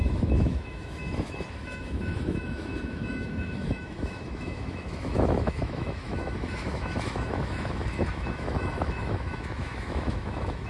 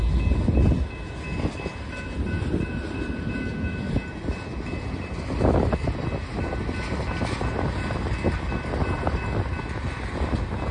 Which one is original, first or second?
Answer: second